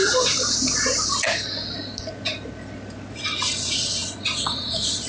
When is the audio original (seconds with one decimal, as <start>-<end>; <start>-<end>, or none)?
0.0-3.1